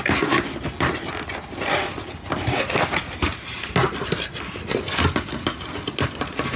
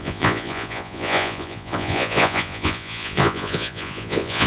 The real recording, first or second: first